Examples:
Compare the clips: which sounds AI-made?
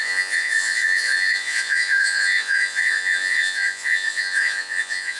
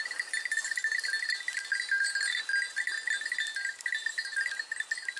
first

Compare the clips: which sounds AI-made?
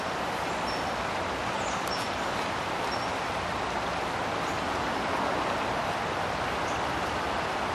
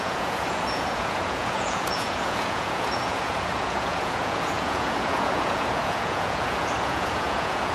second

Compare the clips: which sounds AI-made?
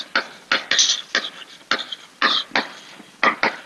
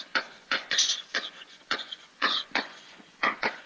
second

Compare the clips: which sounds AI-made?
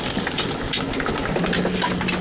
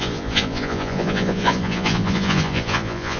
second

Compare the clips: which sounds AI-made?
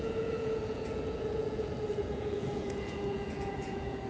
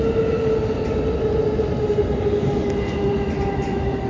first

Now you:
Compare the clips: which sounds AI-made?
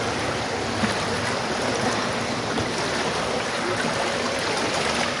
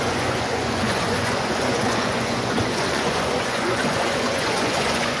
second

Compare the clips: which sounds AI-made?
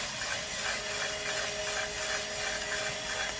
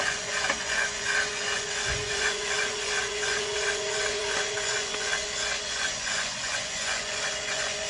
second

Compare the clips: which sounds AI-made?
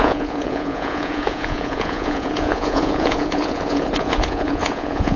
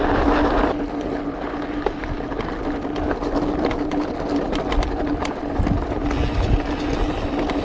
first